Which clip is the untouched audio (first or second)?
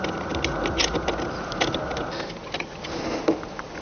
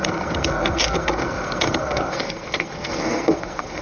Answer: first